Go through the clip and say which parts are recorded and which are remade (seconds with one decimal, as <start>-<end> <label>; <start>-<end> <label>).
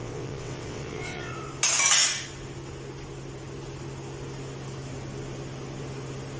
0.0-1.3 remade; 1.3-6.4 recorded